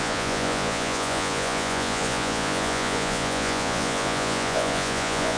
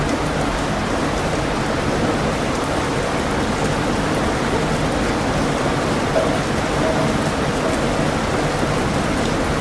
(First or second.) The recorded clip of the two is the second